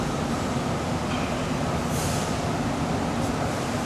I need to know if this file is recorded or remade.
recorded